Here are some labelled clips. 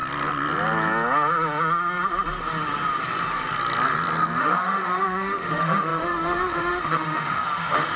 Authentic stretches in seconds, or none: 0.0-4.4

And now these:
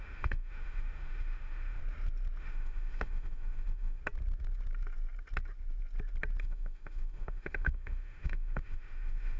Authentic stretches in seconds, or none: 1.8-2.4; 4.0-6.4

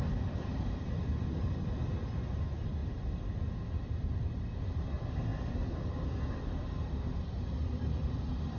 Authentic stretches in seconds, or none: 0.0-8.6

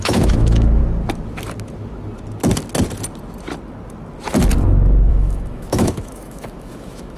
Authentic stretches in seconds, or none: 0.8-5.1

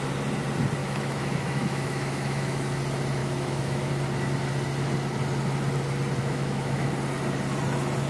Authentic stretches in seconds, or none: 0.0-0.8; 2.8-3.2; 3.9-6.2; 6.9-8.1

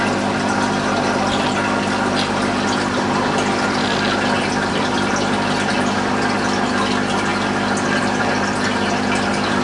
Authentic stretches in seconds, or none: 0.0-9.6